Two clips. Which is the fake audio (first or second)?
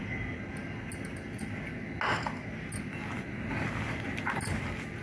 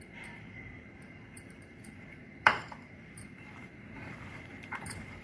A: second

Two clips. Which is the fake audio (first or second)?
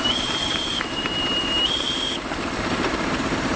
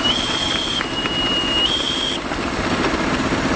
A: first